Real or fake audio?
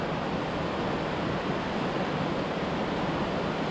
real